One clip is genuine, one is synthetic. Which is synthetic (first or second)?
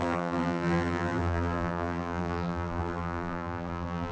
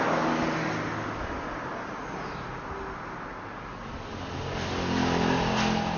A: first